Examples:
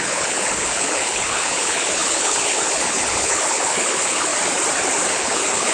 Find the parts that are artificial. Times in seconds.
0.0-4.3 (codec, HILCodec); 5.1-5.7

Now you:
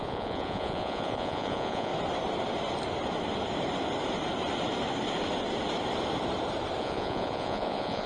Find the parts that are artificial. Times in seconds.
0.0-1.9 (vocoder, Vocos); 6.8-8.1